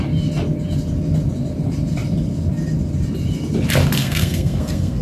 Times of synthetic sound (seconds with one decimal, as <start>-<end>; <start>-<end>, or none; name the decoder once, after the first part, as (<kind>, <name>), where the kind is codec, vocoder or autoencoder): 4.0-5.0 (codec, SNAC)